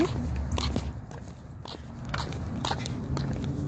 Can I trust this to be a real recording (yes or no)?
yes